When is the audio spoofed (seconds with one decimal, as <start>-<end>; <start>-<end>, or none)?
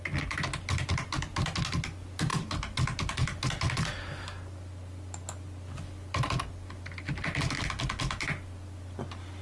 none